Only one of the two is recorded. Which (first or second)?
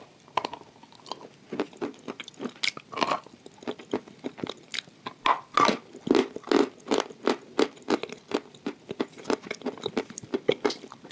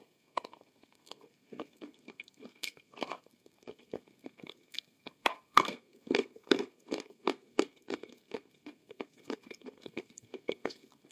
first